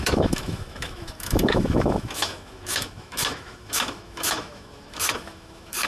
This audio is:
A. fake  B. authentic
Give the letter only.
A